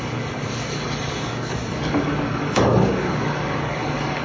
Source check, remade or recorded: remade